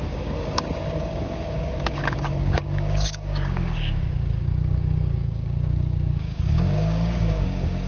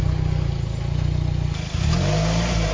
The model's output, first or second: first